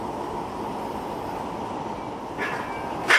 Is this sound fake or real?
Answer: real